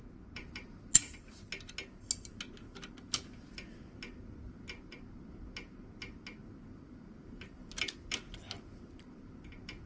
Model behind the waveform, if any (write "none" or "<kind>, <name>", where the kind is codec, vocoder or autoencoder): none